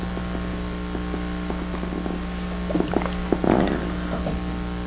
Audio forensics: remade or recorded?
recorded